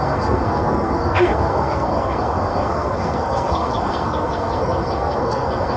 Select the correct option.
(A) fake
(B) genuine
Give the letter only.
A